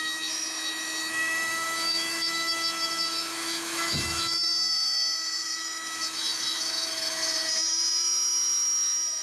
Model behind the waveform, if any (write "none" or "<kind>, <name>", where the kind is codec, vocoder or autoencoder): autoencoder, DAC-VAE